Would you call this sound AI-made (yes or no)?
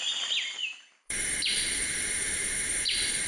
yes